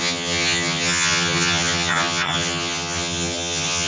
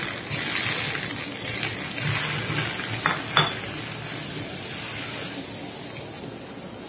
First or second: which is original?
second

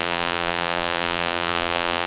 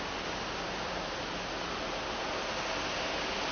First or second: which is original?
second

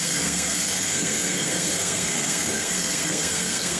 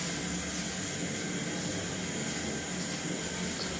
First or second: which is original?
second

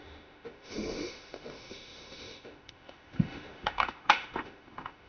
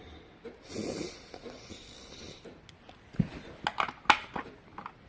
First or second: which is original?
second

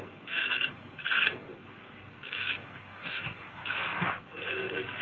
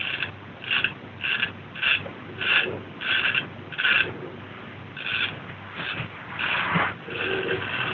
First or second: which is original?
second